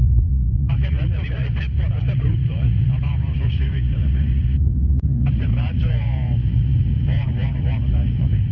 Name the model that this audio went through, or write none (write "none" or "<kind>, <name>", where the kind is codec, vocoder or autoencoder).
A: vocoder, Vocos